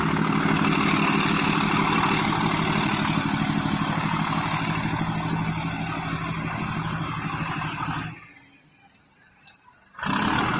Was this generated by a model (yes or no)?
no